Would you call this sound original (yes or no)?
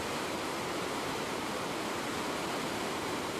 no